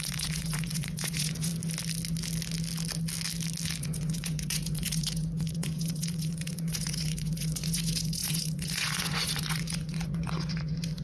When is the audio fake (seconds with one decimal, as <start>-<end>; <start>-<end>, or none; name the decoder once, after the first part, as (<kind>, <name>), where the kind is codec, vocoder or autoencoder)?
0.0-1.5 (vocoder, Vocos); 3.8-11.0